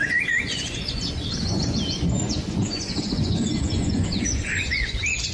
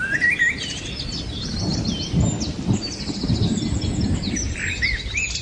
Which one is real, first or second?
second